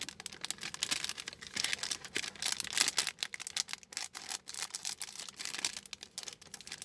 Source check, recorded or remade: recorded